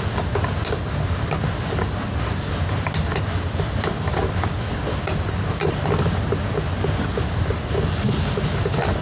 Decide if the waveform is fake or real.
real